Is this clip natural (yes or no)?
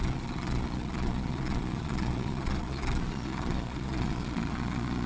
no